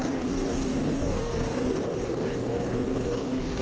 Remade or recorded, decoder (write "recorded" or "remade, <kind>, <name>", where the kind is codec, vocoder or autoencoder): remade, codec, DAC